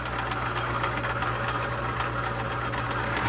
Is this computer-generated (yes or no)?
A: no